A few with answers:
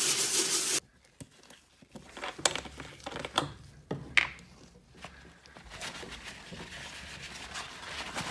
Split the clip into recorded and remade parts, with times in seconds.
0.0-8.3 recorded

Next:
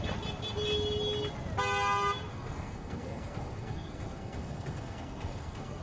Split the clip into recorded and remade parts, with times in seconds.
0.0-2.3 recorded; 2.3-5.8 remade